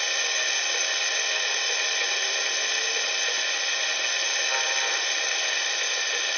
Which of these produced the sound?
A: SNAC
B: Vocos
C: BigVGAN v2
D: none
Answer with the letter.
D